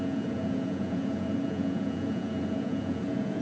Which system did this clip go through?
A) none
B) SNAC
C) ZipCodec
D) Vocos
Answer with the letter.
D